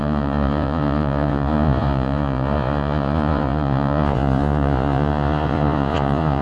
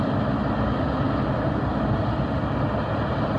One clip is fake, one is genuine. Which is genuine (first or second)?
second